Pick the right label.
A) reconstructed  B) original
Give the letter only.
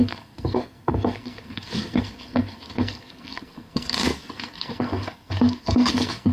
A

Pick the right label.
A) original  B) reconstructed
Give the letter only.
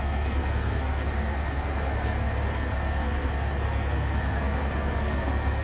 B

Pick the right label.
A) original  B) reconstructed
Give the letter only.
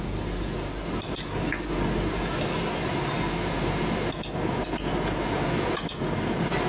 A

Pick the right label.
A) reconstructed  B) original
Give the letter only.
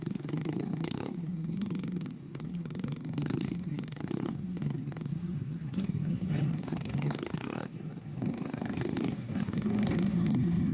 A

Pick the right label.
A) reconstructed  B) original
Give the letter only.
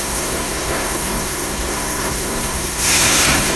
A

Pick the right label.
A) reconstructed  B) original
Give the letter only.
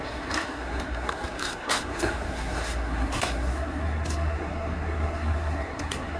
A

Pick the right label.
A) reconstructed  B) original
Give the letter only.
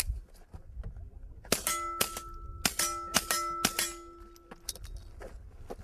B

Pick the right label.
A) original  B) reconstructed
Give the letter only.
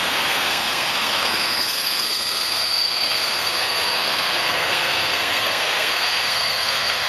B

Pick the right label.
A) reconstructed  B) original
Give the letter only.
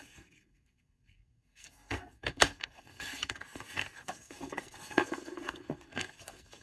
A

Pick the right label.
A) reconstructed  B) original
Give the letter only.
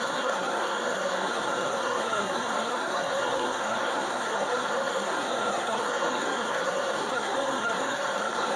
A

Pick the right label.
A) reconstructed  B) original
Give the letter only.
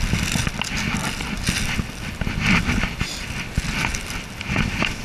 B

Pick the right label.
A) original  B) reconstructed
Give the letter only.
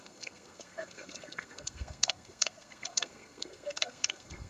B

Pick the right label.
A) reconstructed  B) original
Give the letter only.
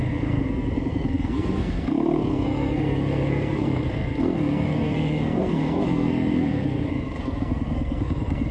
A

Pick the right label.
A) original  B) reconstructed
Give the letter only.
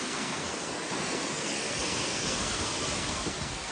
B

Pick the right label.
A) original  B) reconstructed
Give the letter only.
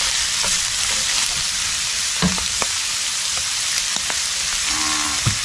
A